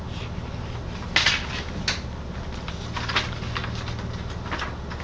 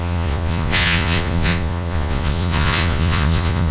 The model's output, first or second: second